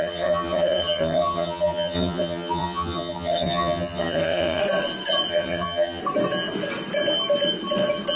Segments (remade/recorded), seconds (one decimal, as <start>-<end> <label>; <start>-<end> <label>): 0.0-4.6 remade; 4.6-5.3 recorded; 5.3-6.0 remade; 6.0-8.2 recorded